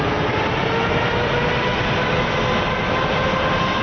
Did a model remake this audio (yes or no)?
no